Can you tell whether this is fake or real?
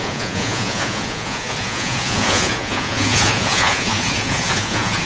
fake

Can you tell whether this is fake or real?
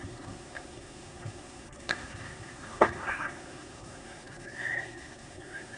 fake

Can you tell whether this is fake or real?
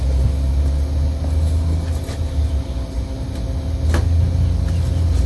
real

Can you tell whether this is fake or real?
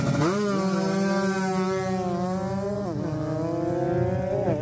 real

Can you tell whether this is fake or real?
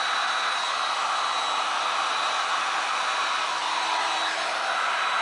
fake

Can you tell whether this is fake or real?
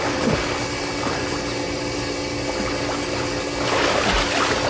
real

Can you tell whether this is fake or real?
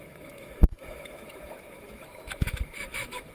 fake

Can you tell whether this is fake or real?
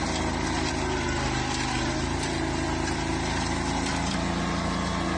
real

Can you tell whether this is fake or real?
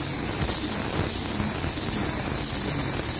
real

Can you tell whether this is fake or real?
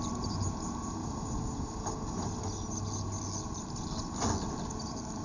real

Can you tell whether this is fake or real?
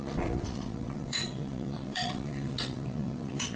fake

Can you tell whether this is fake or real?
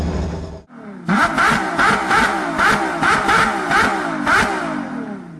real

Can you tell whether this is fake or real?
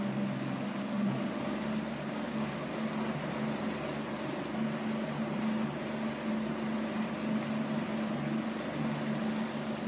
real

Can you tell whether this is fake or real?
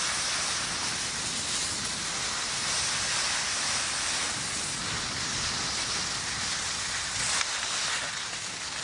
real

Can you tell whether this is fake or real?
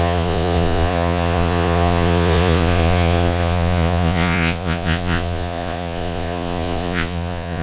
fake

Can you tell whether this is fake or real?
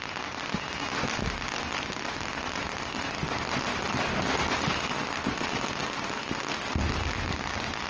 real